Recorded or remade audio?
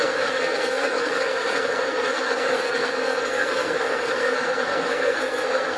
remade